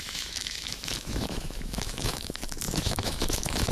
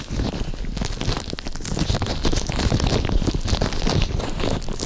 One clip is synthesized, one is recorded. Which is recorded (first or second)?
second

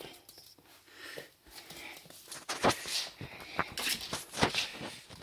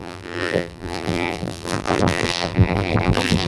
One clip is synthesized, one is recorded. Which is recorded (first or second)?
first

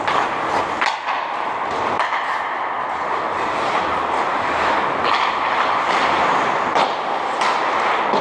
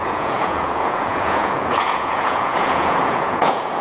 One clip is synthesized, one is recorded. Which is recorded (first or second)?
first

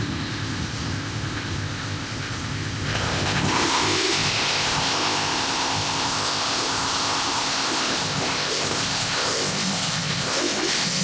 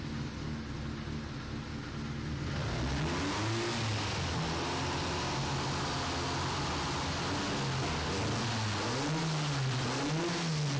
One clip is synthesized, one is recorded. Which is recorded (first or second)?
second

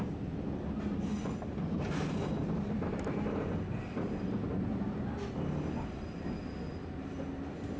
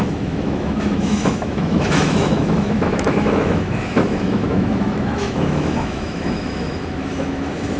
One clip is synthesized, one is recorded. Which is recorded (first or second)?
first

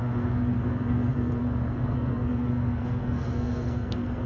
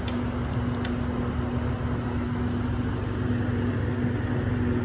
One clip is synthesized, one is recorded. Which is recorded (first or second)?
second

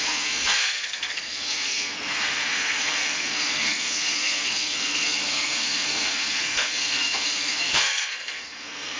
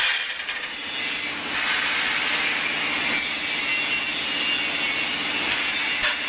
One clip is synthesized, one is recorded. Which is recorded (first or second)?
second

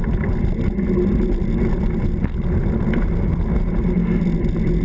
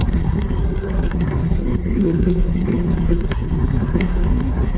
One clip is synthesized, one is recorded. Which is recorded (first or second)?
first